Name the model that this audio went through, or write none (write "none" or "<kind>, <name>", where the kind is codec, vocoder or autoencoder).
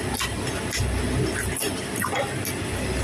none